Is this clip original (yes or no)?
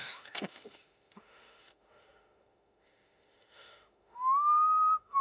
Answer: no